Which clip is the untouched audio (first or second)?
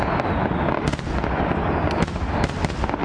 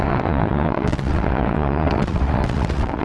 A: first